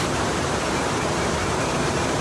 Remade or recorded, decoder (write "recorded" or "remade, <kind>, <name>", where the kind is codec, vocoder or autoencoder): remade, vocoder, BigVGAN v2